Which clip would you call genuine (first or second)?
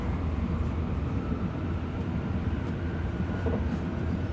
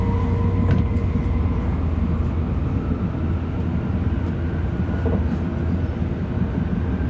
second